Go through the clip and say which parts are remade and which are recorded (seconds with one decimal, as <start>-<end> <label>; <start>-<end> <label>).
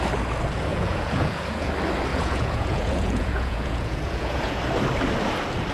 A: 0.0-0.7 recorded; 0.7-1.7 remade; 1.7-2.1 recorded; 2.1-4.6 remade; 4.6-5.7 recorded